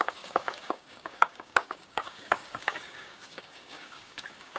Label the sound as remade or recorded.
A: remade